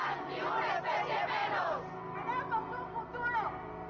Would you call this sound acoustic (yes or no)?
yes